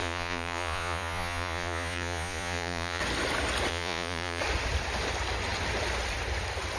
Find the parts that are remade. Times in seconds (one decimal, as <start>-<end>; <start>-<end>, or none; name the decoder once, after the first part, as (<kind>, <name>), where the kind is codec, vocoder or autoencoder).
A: 0.0-3.0 (vocoder, Vocos); 3.7-4.4

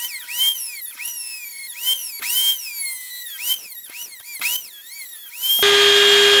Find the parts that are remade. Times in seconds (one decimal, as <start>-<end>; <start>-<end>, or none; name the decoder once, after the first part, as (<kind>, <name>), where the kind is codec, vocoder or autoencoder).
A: none